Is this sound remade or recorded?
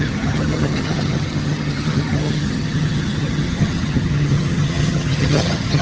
remade